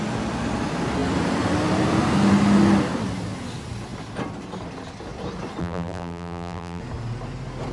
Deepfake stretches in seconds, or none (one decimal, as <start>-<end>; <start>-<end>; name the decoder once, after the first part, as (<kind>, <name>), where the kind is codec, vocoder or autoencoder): 5.6-6.8 (vocoder, BigVGAN v2)